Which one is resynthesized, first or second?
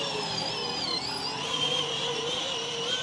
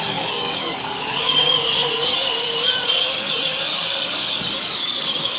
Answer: second